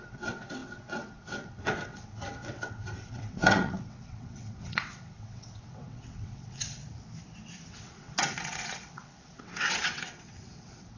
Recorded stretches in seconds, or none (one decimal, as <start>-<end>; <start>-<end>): 6.8-7.7